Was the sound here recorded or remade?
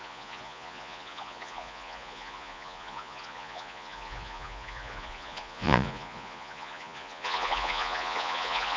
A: remade